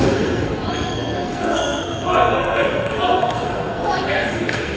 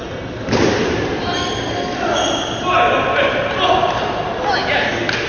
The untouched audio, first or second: second